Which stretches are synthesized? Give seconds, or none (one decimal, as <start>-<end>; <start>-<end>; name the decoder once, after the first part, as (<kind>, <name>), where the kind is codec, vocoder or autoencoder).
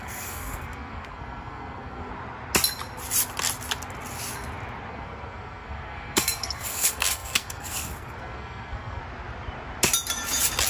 0.0-2.1 (codec, SNAC); 4.9-9.0